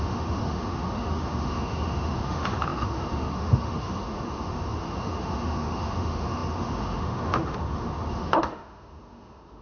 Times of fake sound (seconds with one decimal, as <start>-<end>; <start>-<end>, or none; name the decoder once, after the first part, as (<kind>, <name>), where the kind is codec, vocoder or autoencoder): 0.0-9.6 (autoencoder, DAC-VAE)